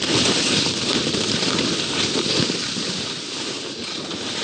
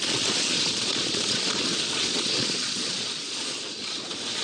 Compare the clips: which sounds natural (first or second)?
first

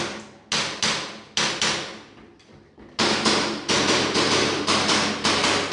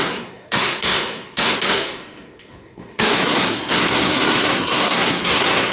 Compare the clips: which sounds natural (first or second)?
first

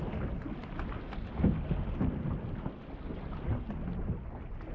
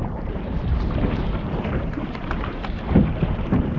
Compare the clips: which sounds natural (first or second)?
first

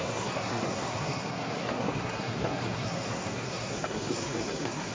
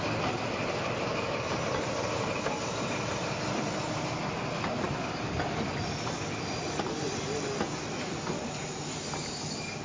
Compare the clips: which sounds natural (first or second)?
second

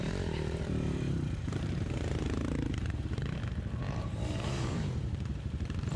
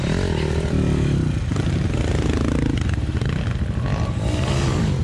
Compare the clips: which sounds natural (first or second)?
second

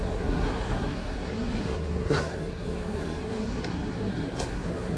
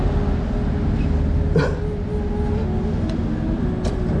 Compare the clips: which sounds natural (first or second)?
second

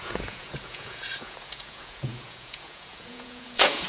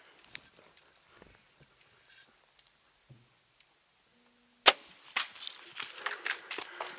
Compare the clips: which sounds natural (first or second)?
second